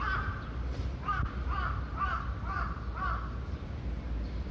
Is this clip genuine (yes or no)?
yes